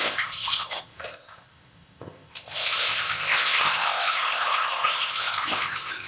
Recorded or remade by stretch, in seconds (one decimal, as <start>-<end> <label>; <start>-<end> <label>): 0.0-6.1 remade